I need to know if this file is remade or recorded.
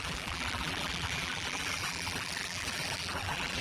remade